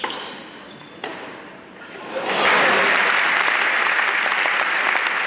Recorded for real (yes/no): no